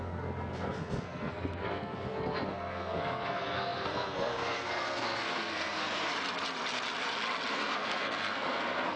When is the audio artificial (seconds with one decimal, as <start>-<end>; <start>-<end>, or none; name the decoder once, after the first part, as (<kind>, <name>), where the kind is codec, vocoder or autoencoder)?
0.0-6.1 (codec, SNAC); 7.5-9.0